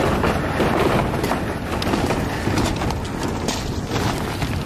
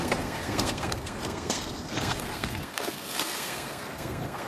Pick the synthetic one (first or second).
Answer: second